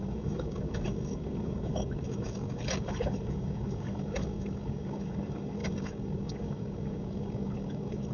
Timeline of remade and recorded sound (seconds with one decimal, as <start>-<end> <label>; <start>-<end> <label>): 0.0-8.1 remade